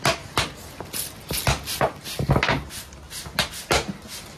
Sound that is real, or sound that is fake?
real